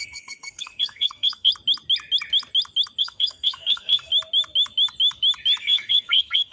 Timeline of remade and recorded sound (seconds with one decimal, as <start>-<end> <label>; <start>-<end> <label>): 0.0-1.5 remade; 1.5-3.0 recorded; 3.0-4.1 remade; 4.1-5.6 recorded; 5.6-6.5 remade